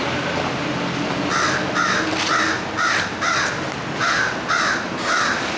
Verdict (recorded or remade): recorded